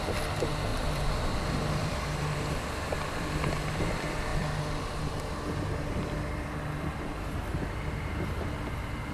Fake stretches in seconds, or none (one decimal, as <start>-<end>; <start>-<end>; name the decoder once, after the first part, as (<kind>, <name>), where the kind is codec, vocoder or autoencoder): 0.7-3.8 (vocoder, BigVGAN v2)

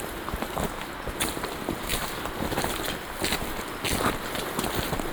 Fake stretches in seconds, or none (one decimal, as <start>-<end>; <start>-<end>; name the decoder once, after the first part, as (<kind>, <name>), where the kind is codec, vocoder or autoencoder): none